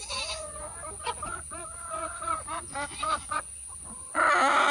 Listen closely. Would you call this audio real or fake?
fake